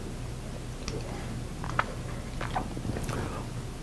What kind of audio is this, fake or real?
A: real